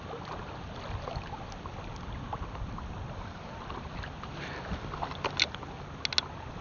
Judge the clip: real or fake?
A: real